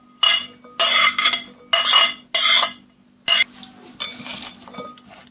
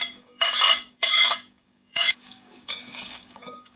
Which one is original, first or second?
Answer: first